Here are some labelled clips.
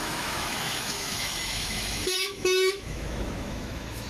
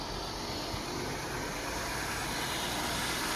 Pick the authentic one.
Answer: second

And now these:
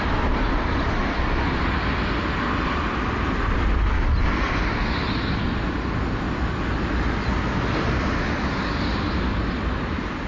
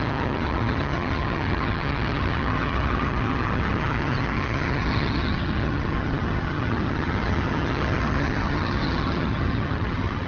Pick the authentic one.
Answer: first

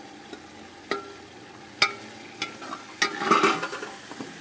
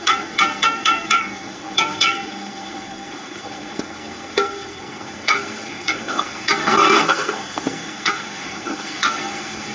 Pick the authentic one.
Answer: first